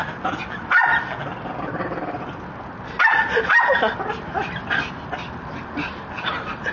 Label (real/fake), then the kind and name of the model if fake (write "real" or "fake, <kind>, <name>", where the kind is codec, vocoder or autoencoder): real